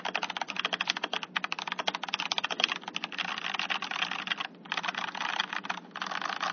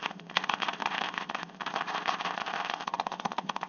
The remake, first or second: second